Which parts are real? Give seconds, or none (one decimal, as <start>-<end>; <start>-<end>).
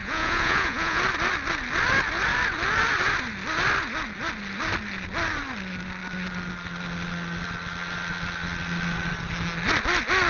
1.0-10.3